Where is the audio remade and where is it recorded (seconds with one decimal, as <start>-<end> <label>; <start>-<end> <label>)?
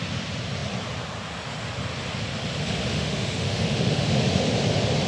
0.0-2.9 recorded; 2.9-4.2 remade; 4.2-5.1 recorded